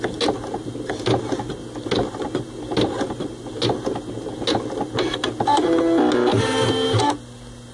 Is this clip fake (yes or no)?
no